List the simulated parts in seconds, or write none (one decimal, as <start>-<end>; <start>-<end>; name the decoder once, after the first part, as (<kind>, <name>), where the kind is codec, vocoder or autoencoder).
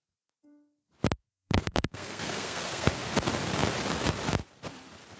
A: 1.2-2.9 (codec, SNAC)